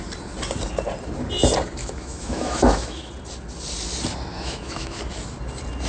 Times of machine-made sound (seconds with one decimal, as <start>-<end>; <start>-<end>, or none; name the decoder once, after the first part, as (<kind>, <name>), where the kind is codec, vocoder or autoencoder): 1.8-3.1 (autoencoder, DAC-VAE); 4.3-5.0